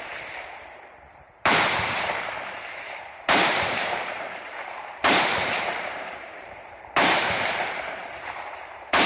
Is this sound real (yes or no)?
no